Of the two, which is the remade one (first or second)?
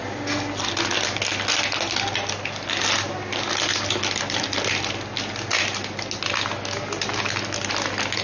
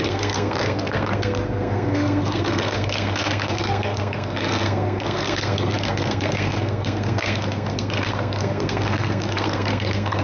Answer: second